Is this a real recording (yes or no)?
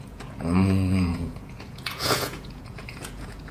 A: no